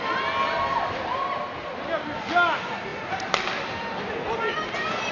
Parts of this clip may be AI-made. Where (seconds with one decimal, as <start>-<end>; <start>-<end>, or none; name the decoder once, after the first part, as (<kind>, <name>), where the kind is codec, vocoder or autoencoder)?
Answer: none